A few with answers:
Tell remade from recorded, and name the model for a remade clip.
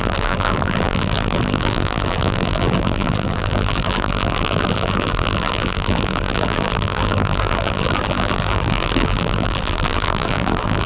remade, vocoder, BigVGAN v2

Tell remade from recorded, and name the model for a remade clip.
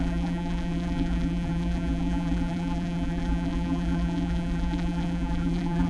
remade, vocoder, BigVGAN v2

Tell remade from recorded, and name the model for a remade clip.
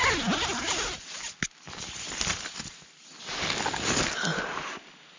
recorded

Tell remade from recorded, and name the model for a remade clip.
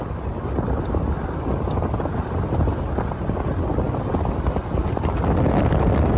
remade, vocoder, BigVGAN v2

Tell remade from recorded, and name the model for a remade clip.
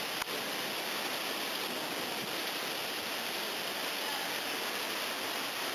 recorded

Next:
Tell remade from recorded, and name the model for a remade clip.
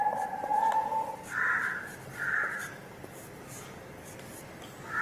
remade, vocoder, BigVGAN v2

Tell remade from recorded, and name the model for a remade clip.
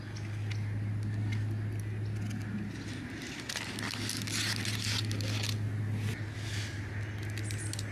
recorded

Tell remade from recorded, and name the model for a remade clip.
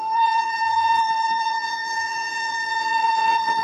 remade, vocoder, BigVGAN v2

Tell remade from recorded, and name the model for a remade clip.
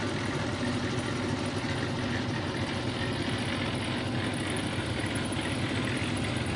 recorded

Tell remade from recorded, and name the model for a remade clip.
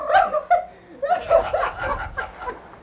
recorded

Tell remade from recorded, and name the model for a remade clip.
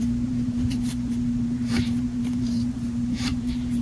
remade, vocoder, BigVGAN v2